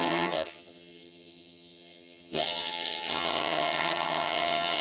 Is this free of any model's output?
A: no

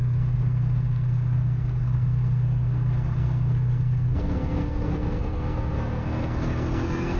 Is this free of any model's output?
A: no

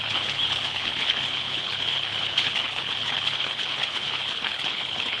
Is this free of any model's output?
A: no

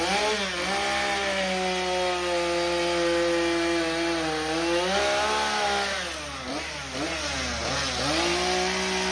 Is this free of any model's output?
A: yes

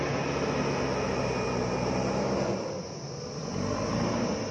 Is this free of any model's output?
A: yes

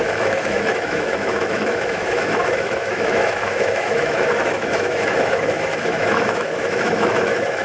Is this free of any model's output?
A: no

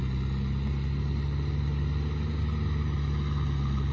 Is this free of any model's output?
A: yes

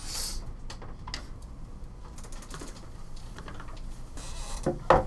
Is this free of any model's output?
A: yes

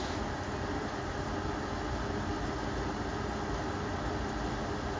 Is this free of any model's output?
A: yes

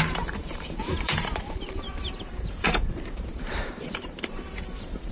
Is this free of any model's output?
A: no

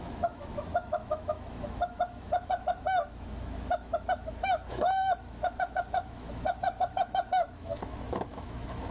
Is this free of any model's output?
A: no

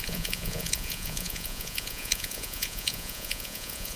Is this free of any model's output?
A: no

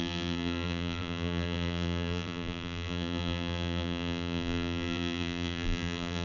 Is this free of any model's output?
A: no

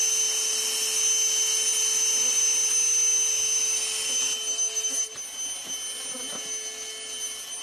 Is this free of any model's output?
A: yes